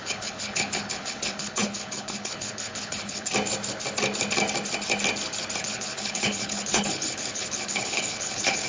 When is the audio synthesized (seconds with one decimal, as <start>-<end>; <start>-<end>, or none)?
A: 0.0-3.3; 5.6-8.7